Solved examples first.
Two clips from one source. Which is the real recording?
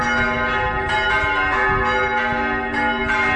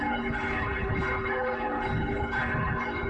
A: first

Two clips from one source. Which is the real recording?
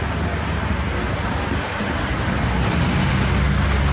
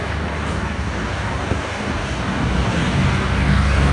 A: first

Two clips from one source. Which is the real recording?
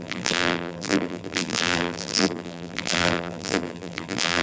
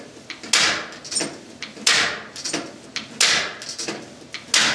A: second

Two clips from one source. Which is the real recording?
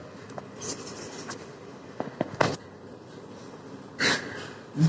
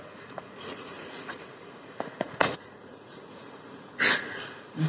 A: first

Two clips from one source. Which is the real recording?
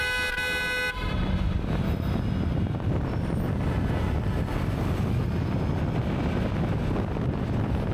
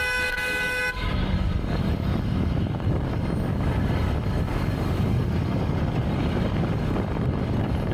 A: first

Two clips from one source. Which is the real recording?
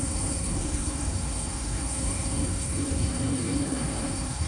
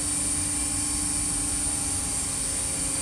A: second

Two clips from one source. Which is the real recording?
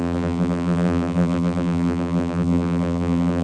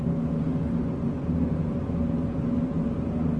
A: second